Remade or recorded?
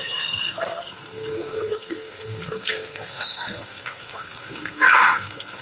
remade